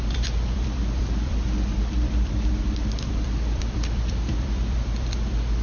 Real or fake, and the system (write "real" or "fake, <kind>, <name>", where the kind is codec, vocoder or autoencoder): fake, vocoder, BigVGAN v2